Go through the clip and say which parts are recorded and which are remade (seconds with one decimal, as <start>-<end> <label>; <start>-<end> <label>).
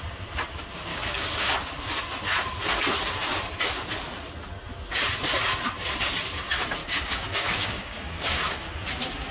0.0-0.9 recorded; 0.9-1.5 remade; 1.5-6.8 recorded; 6.8-8.6 remade; 8.6-9.3 recorded